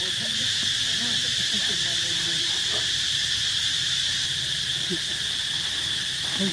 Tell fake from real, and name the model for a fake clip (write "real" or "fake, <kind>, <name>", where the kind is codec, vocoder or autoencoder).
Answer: fake, vocoder, BigVGAN v2